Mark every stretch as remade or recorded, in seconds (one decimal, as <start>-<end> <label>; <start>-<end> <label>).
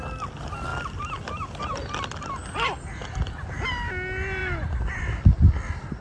0.0-6.0 recorded